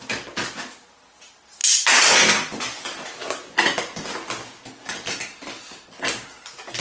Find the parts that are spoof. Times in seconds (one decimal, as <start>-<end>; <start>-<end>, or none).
none